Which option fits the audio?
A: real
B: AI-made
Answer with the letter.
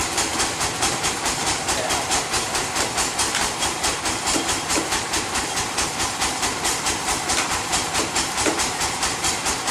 B